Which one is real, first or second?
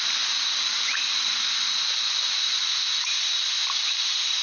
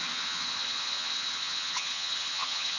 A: first